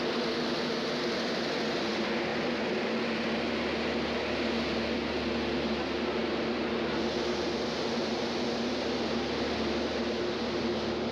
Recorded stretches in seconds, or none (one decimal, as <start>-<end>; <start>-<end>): 0.0-11.1